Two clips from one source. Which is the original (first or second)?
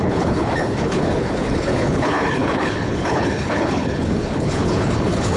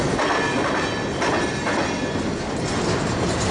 second